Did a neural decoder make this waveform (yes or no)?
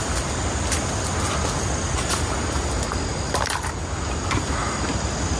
no